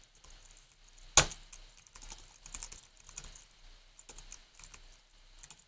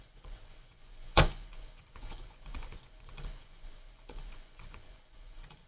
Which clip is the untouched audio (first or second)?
first